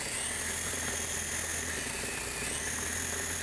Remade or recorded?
recorded